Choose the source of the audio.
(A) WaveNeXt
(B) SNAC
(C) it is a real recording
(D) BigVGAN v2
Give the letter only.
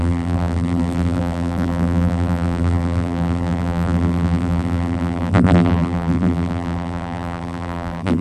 D